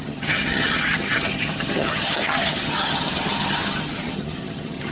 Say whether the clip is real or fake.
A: fake